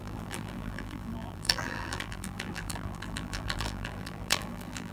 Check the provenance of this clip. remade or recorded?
remade